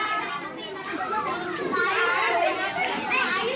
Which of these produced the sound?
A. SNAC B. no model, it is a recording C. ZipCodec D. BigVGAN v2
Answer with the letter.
D